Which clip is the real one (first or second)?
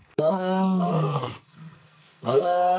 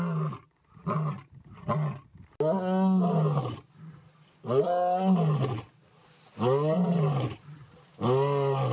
second